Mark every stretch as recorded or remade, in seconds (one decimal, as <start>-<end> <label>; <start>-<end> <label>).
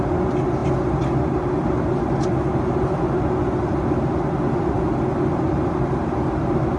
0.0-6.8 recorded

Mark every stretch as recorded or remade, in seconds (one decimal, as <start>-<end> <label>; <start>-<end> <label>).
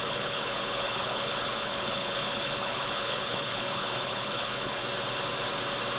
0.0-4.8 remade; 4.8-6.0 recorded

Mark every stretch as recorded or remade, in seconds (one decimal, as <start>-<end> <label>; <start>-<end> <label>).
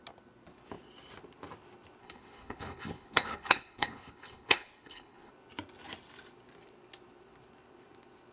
0.0-2.0 recorded; 2.0-5.3 remade; 5.3-8.3 recorded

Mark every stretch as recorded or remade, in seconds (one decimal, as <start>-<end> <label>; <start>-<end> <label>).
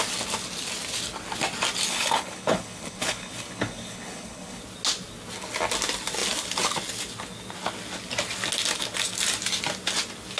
0.0-1.9 recorded; 1.9-4.6 remade; 4.6-10.4 recorded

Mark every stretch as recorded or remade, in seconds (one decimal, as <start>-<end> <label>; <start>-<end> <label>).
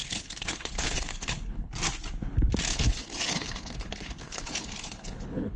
0.0-1.7 remade; 1.7-2.7 recorded; 2.7-5.6 remade